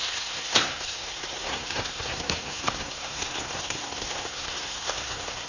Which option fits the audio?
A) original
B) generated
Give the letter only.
B